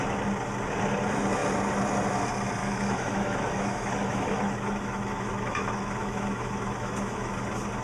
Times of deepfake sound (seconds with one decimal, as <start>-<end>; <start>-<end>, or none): 2.6-7.3

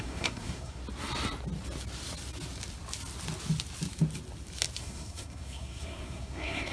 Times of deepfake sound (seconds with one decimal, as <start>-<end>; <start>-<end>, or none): 0.0-0.8; 4.8-6.7

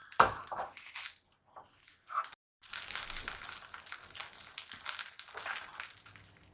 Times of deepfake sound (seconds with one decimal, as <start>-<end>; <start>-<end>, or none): none